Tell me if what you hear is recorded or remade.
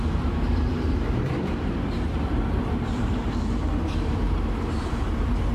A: remade